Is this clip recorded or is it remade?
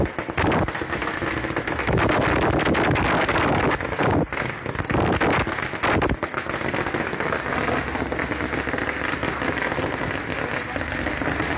recorded